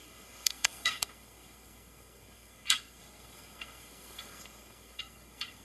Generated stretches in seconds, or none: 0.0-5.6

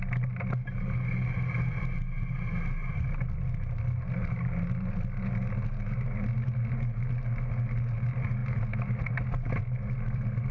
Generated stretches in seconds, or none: none

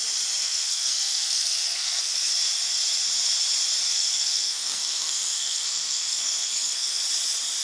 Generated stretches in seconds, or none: 0.4-2.3; 3.9-7.0

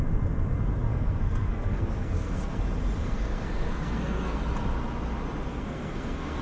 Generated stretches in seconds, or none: 0.9-2.6; 3.0-4.4; 5.5-6.4

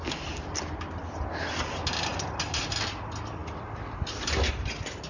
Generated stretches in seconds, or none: none

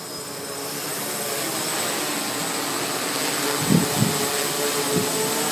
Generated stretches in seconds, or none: none

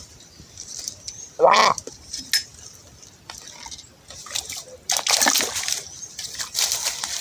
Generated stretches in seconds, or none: none

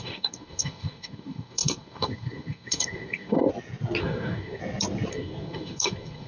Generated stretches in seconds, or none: 0.0-3.5; 4.0-4.6; 5.1-6.3